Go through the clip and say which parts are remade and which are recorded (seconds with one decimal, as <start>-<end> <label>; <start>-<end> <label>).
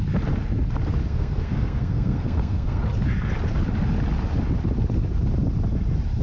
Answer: 0.0-1.0 recorded; 1.0-2.8 remade; 2.8-6.2 recorded